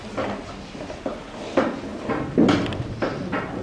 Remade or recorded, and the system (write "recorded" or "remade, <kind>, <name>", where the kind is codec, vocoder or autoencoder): recorded